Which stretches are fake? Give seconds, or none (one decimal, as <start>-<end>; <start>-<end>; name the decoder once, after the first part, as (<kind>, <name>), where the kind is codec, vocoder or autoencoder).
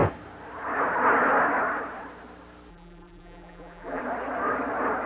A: 2.7-4.0 (vocoder, BigVGAN v2)